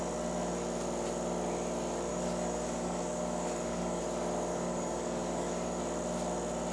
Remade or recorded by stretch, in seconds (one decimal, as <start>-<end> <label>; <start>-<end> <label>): 0.0-2.1 recorded; 2.1-4.0 remade; 4.0-4.5 recorded; 4.5-5.8 remade; 5.8-6.7 recorded

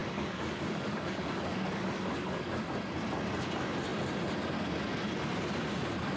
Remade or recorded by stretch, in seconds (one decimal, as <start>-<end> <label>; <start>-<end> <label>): 0.0-2.7 remade; 2.7-6.2 recorded

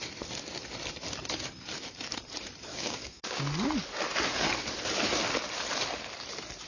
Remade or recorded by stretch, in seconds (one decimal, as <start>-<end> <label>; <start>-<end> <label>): 0.0-2.7 recorded; 2.7-3.4 remade; 3.4-6.7 recorded

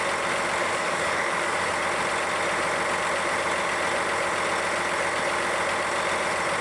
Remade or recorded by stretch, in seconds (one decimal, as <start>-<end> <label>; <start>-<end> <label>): 0.0-0.6 recorded; 0.6-1.7 remade; 1.7-6.6 recorded